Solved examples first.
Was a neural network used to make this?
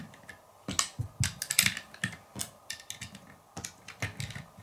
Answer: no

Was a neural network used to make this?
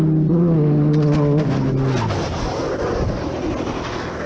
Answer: no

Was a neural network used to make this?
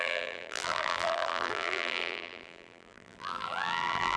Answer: yes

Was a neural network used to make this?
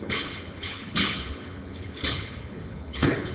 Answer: yes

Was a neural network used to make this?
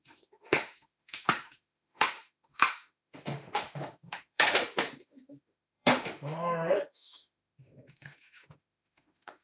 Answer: yes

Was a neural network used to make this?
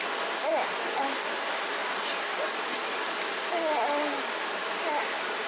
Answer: no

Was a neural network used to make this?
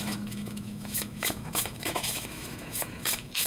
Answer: yes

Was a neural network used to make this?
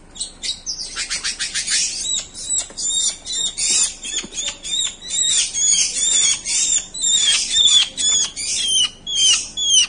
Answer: no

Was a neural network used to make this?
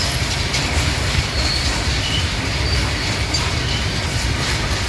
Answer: yes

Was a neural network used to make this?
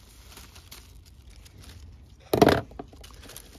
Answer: no